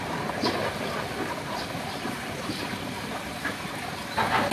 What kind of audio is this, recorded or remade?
recorded